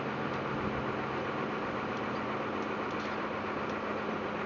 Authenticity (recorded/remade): recorded